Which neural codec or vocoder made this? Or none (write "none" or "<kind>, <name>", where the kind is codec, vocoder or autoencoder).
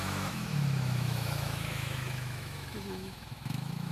autoencoder, DAC-VAE